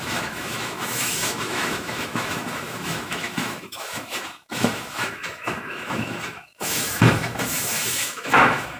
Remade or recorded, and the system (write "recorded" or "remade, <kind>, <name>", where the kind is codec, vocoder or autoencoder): remade, autoencoder, DAC-VAE